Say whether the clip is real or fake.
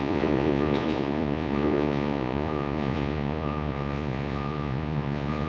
fake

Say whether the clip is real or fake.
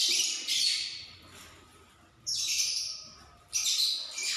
fake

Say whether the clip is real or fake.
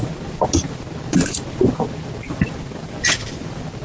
real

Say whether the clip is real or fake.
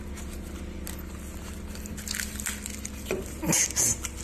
real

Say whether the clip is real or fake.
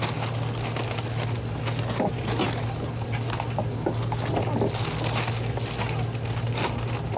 real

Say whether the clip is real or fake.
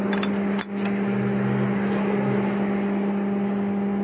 real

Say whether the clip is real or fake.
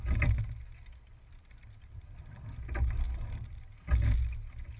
real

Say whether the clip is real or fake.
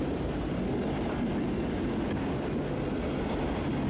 real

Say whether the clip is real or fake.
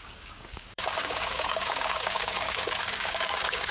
fake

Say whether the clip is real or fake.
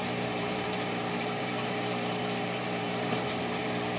fake